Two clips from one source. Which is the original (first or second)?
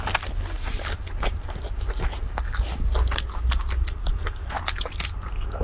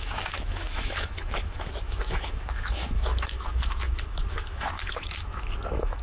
first